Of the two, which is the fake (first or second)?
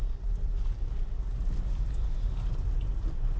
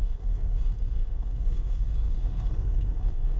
second